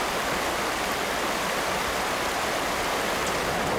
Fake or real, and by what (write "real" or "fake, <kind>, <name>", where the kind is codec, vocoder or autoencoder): real